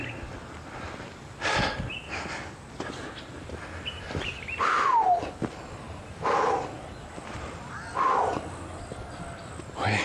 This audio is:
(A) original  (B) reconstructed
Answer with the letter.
A